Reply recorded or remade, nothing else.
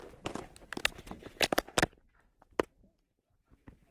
recorded